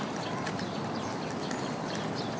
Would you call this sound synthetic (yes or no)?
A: no